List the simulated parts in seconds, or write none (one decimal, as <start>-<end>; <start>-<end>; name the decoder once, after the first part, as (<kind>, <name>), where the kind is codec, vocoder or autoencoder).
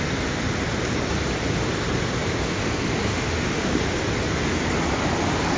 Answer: 3.1-3.8 (autoencoder, DAC-VAE)